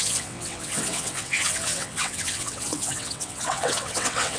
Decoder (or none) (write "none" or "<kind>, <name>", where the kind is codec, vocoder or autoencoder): vocoder, WaveNeXt